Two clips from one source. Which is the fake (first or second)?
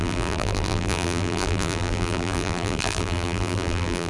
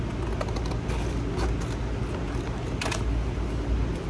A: first